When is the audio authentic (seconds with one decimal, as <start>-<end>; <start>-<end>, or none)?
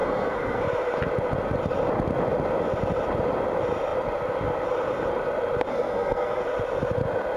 0.6-5.7; 6.4-7.4